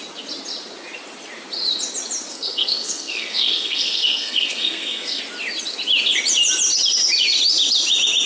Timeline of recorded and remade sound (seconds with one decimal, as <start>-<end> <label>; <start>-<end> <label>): 0.0-2.3 recorded; 2.3-5.2 remade; 5.2-8.3 recorded